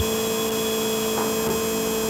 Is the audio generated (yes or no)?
no